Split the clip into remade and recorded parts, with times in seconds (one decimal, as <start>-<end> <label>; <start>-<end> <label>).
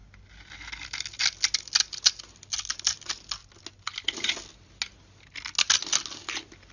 0.0-6.7 recorded